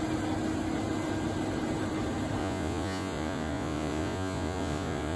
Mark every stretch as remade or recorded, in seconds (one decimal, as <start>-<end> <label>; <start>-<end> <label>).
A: 0.0-2.4 recorded; 2.4-5.2 remade